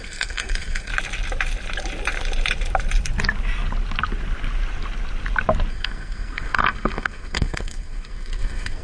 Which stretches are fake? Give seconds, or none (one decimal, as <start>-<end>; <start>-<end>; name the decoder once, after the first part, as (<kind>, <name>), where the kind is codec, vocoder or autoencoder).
0.0-0.9 (codec, SNAC); 5.7-8.8